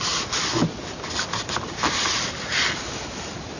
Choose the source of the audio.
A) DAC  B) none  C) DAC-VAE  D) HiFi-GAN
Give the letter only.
B